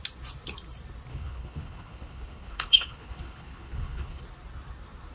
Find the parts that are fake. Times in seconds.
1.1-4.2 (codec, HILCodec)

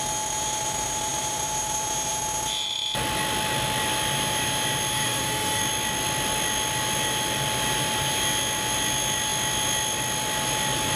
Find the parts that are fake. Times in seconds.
4.9-5.6 (autoencoder, DAC-VAE)

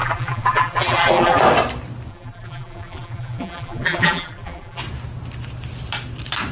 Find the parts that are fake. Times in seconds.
0.0-1.4 (vocoder, BigVGAN v2); 2.1-4.8